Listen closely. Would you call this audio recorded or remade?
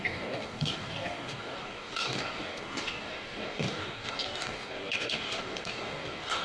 remade